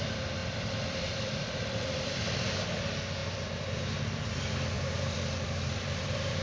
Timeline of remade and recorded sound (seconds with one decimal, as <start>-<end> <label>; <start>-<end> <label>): 0.0-0.4 recorded; 0.4-2.2 remade; 2.2-3.2 recorded; 3.2-6.4 remade